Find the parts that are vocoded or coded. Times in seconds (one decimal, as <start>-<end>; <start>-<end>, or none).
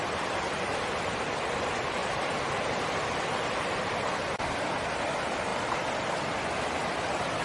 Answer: none